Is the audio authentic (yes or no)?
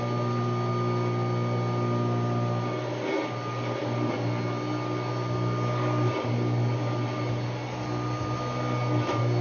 yes